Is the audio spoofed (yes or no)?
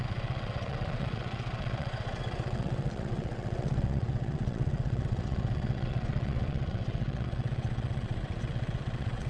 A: yes